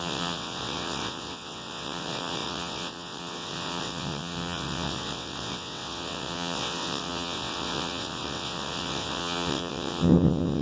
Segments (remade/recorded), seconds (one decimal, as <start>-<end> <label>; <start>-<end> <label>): 0.0-10.6 remade